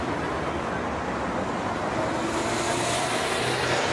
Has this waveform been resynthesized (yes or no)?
no